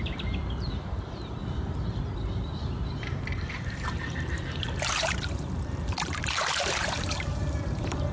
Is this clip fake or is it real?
fake